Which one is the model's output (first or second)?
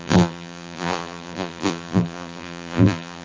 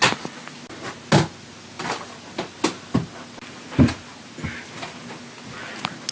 first